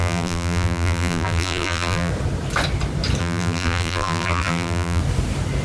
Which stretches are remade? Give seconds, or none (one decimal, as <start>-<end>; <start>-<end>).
0.0-2.1; 3.2-5.0